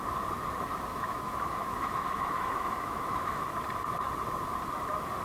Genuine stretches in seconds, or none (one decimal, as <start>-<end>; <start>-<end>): 0.0-0.9; 3.5-5.2